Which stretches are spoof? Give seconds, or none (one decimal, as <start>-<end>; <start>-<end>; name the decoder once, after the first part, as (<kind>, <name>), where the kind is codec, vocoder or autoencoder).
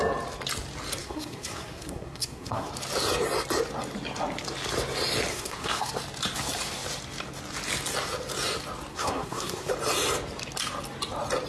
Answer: 1.0-2.7 (codec, SNAC); 5.3-5.9; 8.9-9.7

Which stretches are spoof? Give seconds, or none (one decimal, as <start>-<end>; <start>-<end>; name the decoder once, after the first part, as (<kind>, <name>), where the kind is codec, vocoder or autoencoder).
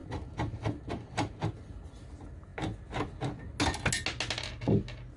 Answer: none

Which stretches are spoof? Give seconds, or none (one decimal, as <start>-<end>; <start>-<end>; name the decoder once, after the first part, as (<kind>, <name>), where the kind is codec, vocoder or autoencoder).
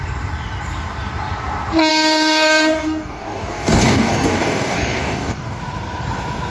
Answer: 1.9-5.6 (codec, DAC)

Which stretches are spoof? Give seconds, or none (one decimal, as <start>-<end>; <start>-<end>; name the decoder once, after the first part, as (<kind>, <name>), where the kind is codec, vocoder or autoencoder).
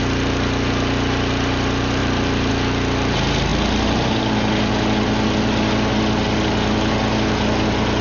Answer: 2.0-2.5 (vocoder, BigVGAN v2)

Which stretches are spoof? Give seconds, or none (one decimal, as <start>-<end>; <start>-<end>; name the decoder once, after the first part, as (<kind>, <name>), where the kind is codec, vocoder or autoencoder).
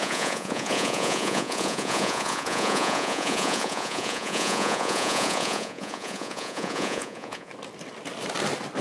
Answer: 0.0-7.5 (vocoder, Vocos)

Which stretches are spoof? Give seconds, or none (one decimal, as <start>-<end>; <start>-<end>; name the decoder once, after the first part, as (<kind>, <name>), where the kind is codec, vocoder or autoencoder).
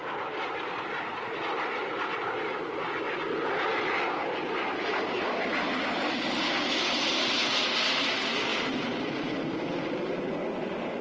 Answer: 0.0-1.1 (vocoder, BigVGAN v2); 8.5-9.1